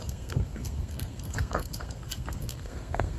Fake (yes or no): yes